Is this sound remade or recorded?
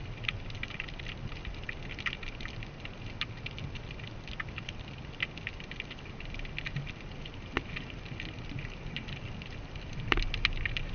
recorded